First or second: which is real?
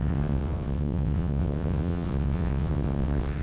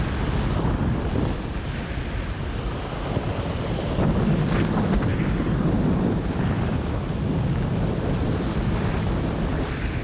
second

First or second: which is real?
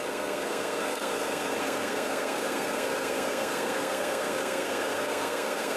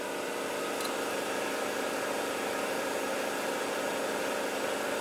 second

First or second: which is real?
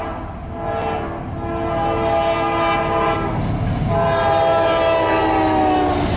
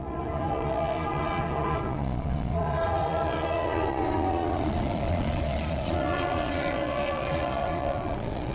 first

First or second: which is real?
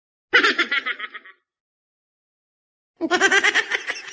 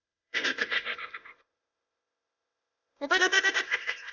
first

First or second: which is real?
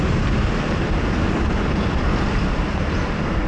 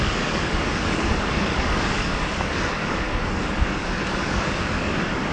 first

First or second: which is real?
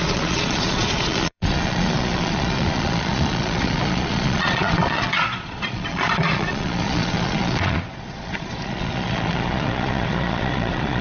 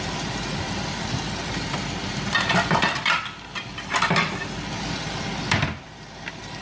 second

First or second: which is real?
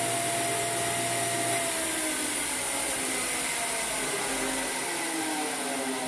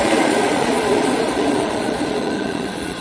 first